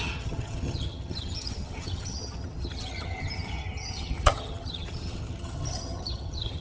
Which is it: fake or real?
fake